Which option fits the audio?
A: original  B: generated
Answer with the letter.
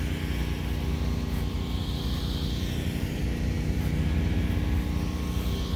A